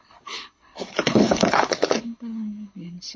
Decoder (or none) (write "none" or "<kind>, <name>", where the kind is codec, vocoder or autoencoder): codec, HILCodec